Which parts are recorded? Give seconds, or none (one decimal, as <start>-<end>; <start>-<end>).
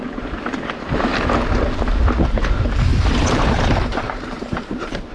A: 1.1-2.2